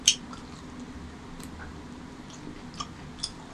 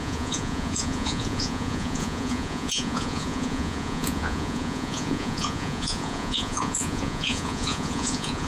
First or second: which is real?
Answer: first